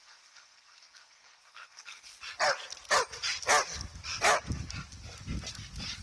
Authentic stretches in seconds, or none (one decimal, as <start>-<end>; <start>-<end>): 2.1-6.0